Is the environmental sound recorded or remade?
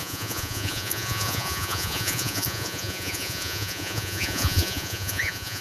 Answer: remade